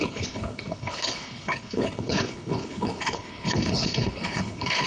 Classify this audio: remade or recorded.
remade